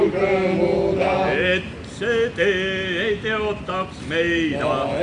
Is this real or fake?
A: real